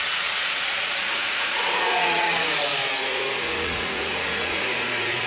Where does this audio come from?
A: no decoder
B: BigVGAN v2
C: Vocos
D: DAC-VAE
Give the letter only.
C